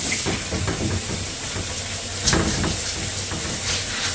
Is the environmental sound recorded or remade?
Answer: recorded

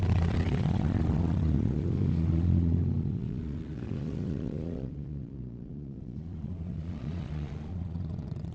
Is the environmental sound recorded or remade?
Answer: remade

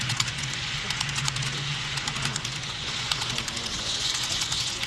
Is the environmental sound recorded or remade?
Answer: remade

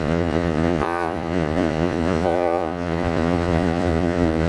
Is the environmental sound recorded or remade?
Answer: remade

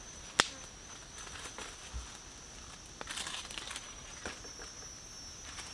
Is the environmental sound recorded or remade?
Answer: recorded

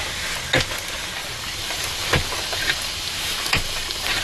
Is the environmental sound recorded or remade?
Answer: recorded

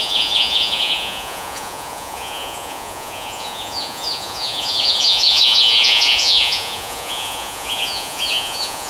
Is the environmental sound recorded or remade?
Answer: remade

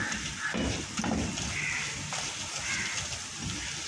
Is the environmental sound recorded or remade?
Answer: recorded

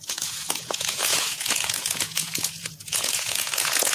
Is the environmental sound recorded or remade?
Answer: remade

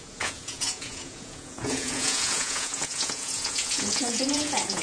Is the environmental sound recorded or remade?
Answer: remade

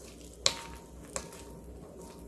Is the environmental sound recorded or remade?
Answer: recorded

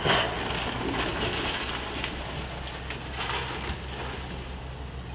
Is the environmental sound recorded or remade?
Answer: recorded